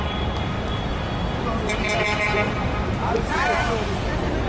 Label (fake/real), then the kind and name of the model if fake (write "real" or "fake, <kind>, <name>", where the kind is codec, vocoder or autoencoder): real